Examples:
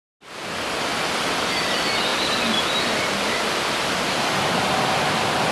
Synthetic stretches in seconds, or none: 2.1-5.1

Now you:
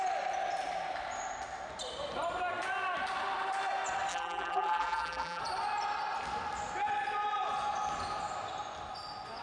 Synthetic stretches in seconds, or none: 4.1-5.4

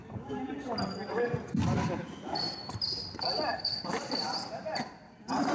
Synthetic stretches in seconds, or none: 2.3-5.5

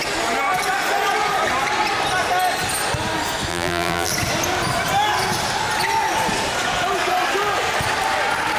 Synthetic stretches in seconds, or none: 3.5-4.1

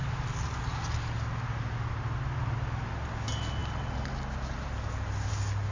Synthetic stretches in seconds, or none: none